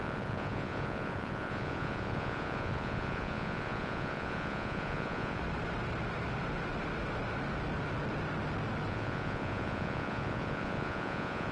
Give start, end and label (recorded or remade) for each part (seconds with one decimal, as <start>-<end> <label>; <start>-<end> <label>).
0.0-5.4 remade; 5.4-8.9 recorded; 8.9-11.5 remade